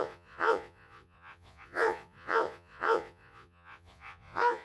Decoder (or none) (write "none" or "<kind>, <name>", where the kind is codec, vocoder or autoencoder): vocoder, Vocos